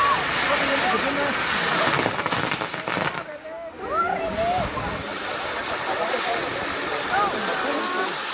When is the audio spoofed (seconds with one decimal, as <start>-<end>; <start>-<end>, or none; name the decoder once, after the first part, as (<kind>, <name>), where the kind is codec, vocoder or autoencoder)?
none